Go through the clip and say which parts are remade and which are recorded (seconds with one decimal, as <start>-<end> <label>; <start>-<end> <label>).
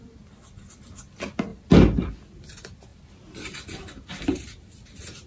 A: 0.0-5.3 recorded